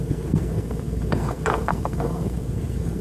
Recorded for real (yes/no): no